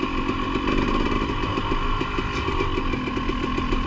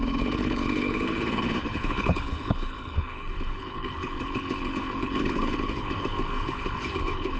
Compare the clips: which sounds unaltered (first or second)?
first